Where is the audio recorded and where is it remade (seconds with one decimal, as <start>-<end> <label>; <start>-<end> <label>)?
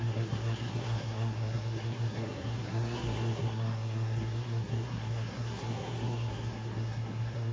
0.0-7.5 remade